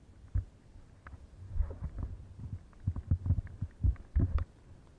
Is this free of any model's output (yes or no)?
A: yes